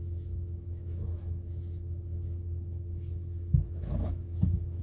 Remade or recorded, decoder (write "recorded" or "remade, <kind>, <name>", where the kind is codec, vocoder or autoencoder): remade, autoencoder, DAC-VAE